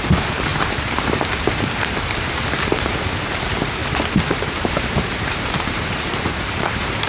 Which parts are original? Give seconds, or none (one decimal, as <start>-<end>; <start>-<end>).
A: none